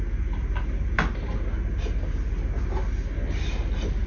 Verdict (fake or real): real